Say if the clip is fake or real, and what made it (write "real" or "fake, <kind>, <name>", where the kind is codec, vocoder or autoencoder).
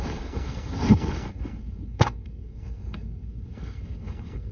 fake, codec, SNAC